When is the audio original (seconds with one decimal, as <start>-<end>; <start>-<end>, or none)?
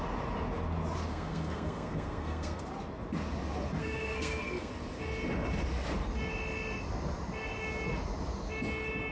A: 0.0-1.1; 2.6-3.8; 4.7-9.1